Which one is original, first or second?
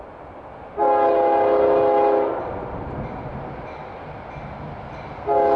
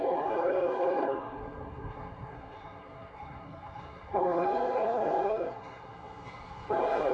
first